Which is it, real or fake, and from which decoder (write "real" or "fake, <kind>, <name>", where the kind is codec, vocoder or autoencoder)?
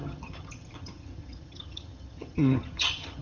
fake, vocoder, HiFi-GAN